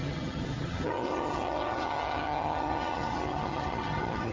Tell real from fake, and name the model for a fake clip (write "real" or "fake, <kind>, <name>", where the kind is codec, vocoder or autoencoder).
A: fake, vocoder, HiFi-GAN